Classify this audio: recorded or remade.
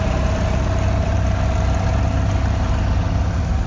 recorded